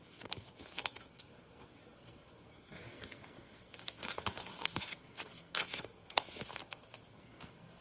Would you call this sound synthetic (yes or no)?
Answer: yes